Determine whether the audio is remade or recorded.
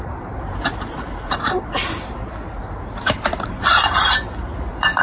remade